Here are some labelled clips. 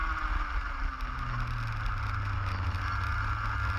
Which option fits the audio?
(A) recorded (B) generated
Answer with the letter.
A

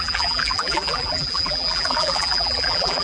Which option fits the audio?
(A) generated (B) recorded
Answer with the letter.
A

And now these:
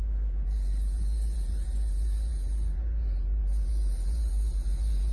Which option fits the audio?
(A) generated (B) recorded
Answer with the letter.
A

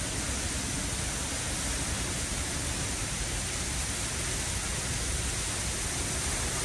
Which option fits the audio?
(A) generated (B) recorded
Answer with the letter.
B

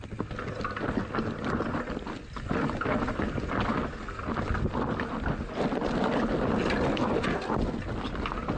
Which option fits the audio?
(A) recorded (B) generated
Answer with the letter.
A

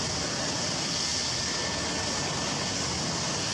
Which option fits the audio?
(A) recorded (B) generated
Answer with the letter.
A